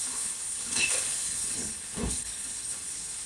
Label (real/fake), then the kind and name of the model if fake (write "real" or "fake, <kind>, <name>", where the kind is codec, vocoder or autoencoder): fake, codec, HILCodec